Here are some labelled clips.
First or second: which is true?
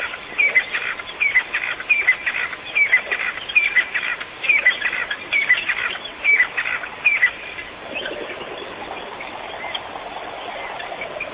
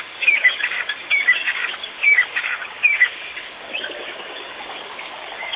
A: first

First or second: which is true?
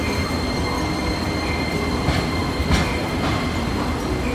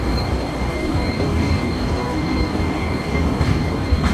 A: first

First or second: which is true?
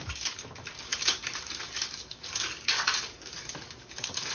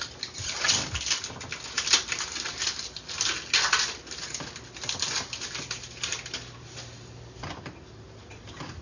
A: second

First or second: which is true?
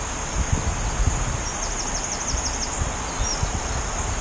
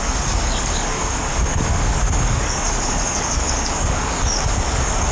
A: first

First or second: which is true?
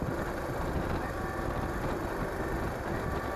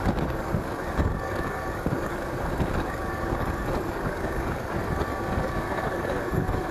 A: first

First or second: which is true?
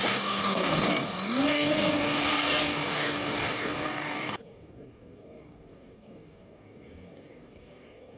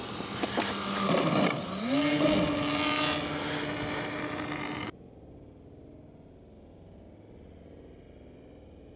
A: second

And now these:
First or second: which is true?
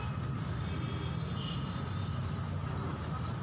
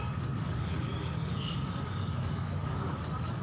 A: first